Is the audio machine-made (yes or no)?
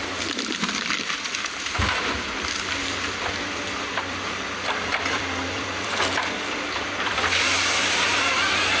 yes